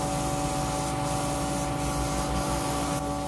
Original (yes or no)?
yes